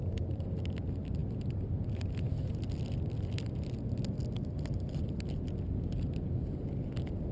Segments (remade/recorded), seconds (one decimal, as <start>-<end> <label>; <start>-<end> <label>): 0.0-7.3 recorded